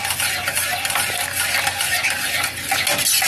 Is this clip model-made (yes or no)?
no